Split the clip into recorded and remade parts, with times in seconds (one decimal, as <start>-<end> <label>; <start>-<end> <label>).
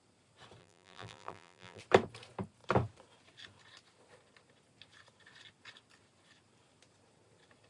0.0-0.6 recorded; 0.6-1.8 remade; 1.8-7.7 recorded